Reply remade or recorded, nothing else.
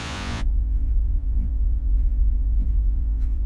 remade